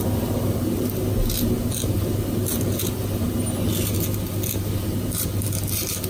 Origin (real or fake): real